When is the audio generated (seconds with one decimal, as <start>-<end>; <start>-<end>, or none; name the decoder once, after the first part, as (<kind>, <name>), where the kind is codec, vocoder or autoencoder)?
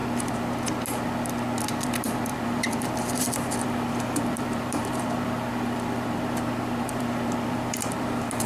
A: 1.6-8.5 (vocoder, BigVGAN v2)